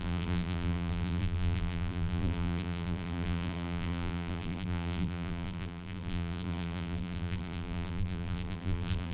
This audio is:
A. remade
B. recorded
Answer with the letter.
A